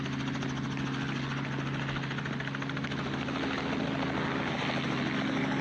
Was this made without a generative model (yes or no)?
yes